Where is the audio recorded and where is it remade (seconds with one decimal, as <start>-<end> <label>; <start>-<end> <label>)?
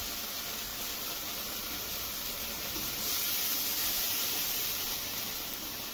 0.0-0.7 recorded; 0.7-3.3 remade; 3.3-3.8 recorded; 3.8-5.9 remade